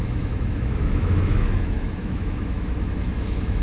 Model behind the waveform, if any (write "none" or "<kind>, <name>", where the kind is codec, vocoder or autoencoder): autoencoder, DAC-VAE